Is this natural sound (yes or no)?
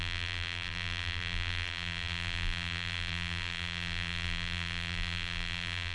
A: no